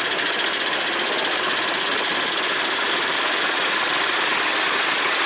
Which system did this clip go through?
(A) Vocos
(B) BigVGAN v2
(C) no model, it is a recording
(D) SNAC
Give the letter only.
C